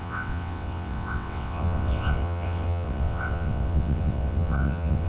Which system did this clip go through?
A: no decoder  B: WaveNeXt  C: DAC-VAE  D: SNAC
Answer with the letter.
B